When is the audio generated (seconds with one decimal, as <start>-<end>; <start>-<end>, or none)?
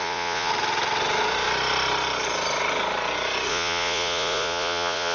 0.0-0.5; 3.5-5.1